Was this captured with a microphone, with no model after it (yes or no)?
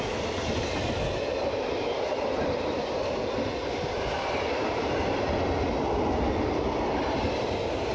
yes